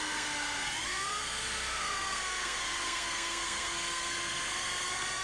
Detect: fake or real fake